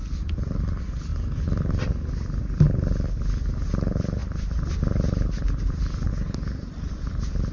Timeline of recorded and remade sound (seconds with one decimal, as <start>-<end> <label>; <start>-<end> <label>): 0.0-1.1 remade; 1.1-2.0 recorded; 2.0-7.5 remade